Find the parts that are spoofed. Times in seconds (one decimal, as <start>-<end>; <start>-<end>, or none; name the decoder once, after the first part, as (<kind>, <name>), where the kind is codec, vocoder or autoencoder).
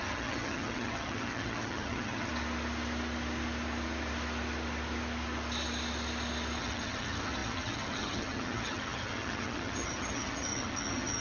0.0-2.3 (vocoder, HiFi-GAN); 6.6-11.2